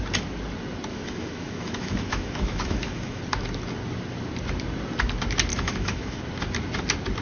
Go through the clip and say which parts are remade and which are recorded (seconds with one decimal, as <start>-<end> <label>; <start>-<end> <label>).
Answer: 0.0-0.9 recorded; 0.9-3.2 remade; 3.2-5.5 recorded; 5.5-6.2 remade; 6.2-7.2 recorded